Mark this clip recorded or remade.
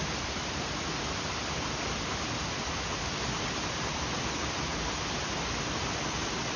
recorded